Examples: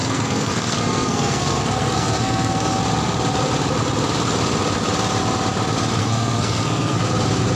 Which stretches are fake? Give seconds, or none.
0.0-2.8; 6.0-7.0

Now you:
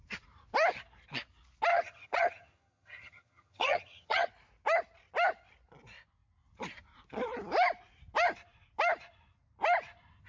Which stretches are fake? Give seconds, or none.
1.7-4.3

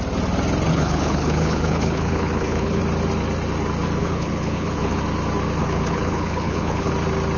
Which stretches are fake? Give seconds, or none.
0.7-2.8; 4.0-5.0; 5.6-6.9

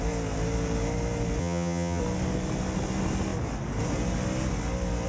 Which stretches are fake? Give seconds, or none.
1.4-2.0

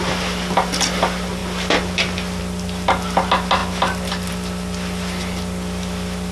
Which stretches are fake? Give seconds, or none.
none